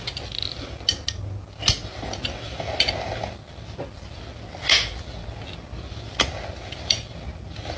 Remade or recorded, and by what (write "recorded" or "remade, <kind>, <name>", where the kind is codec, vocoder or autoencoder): recorded